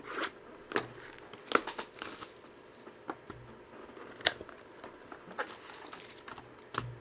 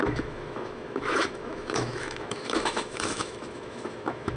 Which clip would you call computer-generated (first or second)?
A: second